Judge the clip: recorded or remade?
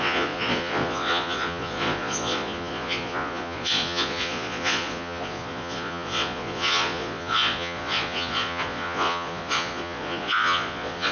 remade